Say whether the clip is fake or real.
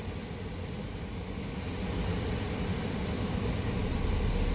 real